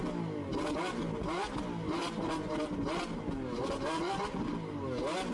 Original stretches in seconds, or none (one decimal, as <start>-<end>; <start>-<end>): 0.0-5.3